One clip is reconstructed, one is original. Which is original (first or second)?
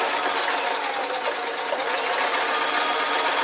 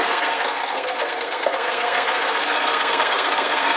first